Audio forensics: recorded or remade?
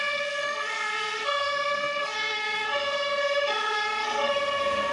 remade